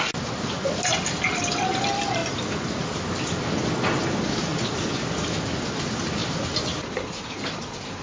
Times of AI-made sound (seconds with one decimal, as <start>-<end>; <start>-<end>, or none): none